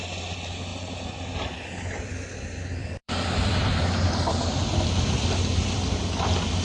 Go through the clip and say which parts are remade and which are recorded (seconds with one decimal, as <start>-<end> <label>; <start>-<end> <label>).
0.0-0.7 recorded; 0.7-2.1 remade; 2.1-2.8 recorded; 2.8-5.9 remade; 5.9-6.6 recorded